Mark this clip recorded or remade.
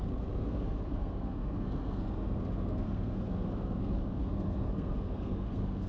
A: remade